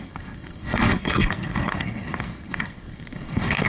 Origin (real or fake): fake